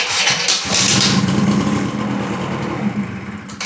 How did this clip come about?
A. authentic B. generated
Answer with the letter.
A